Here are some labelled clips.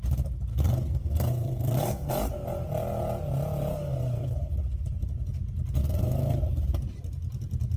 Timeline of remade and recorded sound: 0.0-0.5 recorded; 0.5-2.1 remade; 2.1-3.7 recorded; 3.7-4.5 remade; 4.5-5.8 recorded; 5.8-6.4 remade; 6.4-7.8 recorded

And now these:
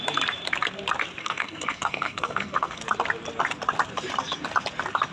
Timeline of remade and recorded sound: 0.0-1.2 recorded; 1.2-2.8 remade; 2.8-5.1 recorded

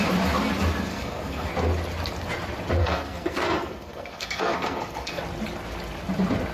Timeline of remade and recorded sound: 0.0-0.9 recorded; 0.9-1.5 remade; 1.5-2.8 recorded; 2.8-5.2 remade; 5.2-6.5 recorded

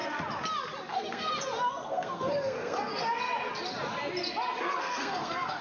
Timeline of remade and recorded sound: 0.0-0.9 recorded; 0.9-1.3 remade; 1.3-1.9 recorded; 1.9-2.9 remade; 2.9-4.6 recorded; 4.6-5.6 remade

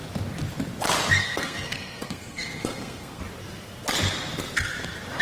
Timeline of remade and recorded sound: 0.0-1.2 recorded; 1.2-3.2 remade; 3.2-5.2 recorded

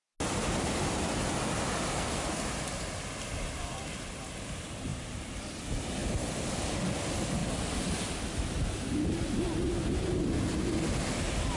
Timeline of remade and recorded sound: 0.0-1.9 recorded; 1.9-2.4 remade; 2.4-11.6 recorded